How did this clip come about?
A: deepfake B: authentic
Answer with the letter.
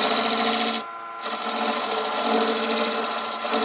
B